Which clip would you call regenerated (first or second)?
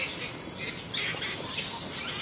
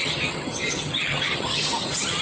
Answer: second